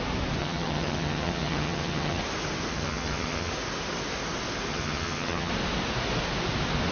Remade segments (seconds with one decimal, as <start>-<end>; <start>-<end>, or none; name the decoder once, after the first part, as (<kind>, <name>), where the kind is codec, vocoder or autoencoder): 0.4-2.2 (vocoder, HiFi-GAN); 2.7-3.5; 4.7-5.5